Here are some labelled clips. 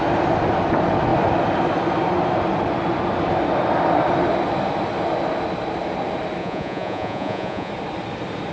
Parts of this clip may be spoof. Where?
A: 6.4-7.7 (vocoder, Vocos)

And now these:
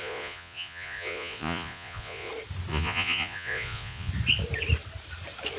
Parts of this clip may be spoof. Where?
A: 0.0-2.3 (vocoder, Vocos); 2.7-4.1

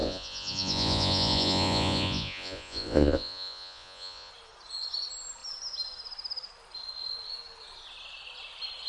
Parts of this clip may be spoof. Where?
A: 0.0-4.3 (vocoder, Vocos)

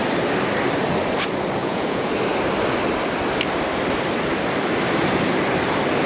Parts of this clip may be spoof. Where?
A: 1.6-2.1 (vocoder, Vocos)

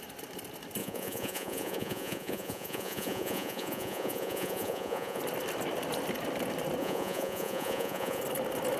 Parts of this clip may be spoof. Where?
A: 0.8-5.2 (vocoder, Vocos); 6.8-8.2